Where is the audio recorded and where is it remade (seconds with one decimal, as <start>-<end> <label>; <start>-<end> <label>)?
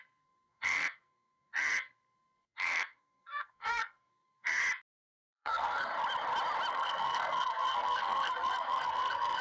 0.0-4.6 remade; 4.6-5.3 recorded; 5.3-5.9 remade; 5.9-6.7 recorded; 6.7-9.4 remade